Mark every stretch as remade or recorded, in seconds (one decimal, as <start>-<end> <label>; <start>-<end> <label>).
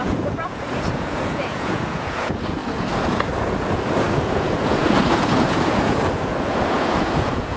0.0-7.6 remade